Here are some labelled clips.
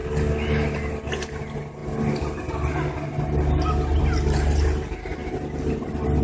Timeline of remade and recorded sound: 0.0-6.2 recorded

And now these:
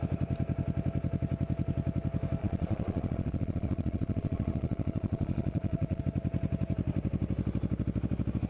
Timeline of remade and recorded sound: 0.0-2.4 recorded; 2.4-6.0 remade; 6.0-8.5 recorded

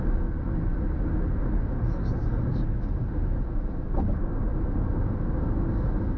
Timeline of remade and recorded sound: 0.0-6.2 recorded

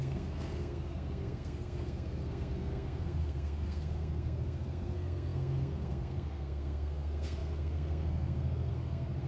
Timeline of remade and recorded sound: 0.0-9.3 remade

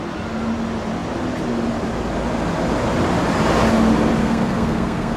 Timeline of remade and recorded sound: 0.0-4.2 recorded; 4.2-5.2 remade

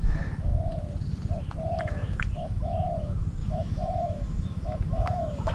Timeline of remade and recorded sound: 0.0-0.5 remade; 0.5-1.8 recorded; 1.8-5.5 remade

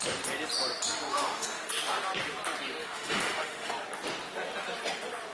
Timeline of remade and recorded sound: 0.0-1.1 recorded; 1.1-1.7 remade; 1.7-2.8 recorded; 2.8-3.7 remade; 3.7-5.3 recorded

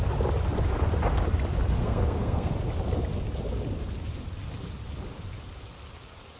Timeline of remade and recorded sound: 0.0-1.8 recorded; 1.8-2.5 remade; 2.5-6.4 recorded